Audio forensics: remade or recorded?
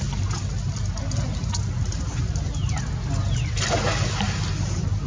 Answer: recorded